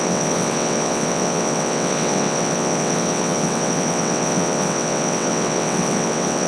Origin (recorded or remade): remade